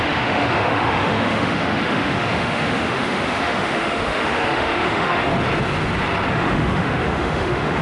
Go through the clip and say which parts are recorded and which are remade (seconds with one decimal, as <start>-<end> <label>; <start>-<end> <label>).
0.0-5.3 remade; 5.3-6.3 recorded; 6.3-7.8 remade